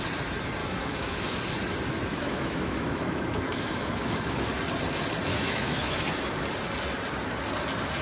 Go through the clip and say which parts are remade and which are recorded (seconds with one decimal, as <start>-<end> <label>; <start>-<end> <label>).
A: 0.0-0.6 recorded; 0.6-1.4 remade; 1.4-2.1 recorded; 2.1-4.5 remade; 4.5-5.3 recorded; 5.3-6.1 remade; 6.1-8.0 recorded